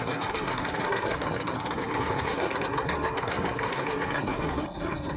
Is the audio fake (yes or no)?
yes